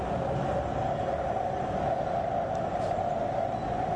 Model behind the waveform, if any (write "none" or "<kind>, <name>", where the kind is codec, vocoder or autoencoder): none